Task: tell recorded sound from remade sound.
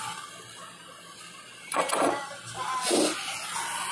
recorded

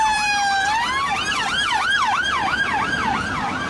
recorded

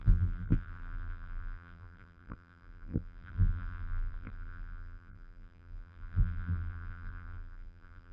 remade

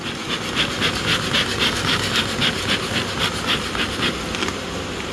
recorded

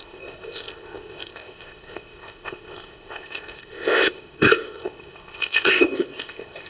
remade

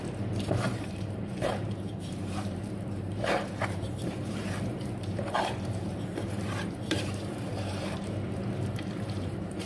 remade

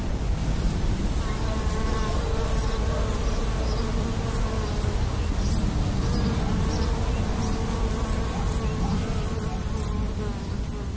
recorded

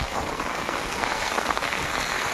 remade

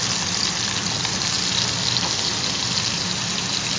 recorded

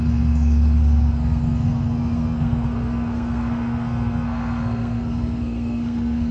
remade